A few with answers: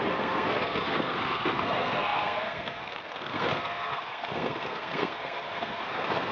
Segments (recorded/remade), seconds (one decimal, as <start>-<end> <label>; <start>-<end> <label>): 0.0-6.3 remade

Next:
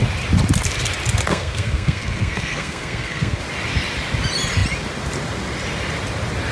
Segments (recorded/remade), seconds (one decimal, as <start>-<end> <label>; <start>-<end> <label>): 0.0-1.3 recorded; 1.3-3.4 remade; 3.4-6.5 recorded

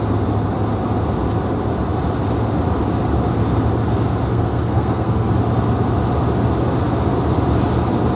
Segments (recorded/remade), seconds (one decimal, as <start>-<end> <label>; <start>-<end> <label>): 0.0-4.3 recorded; 4.3-5.3 remade; 5.3-8.2 recorded

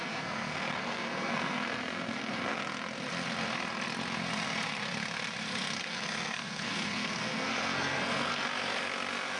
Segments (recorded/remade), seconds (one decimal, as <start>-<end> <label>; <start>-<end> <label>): 0.0-2.6 remade; 2.6-5.8 recorded; 5.8-8.4 remade; 8.4-9.4 recorded

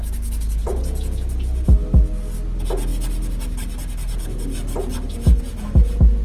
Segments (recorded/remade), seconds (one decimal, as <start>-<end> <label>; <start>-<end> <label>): 0.0-6.2 recorded

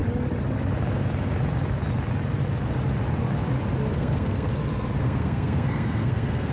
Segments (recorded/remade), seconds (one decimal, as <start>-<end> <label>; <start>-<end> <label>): 0.0-3.9 recorded; 3.9-4.5 remade; 4.5-5.0 recorded; 5.0-6.5 remade

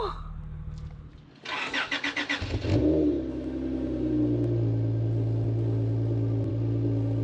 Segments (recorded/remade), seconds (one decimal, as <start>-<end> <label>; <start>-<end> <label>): 0.0-7.2 recorded